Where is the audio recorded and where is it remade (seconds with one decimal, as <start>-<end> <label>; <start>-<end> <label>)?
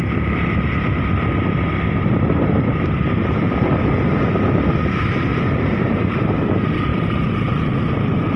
0.0-5.3 recorded; 5.3-6.4 remade; 6.4-6.9 recorded; 6.9-7.7 remade; 7.7-8.4 recorded